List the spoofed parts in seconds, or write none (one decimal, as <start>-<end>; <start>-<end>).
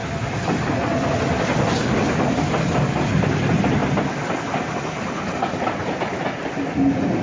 none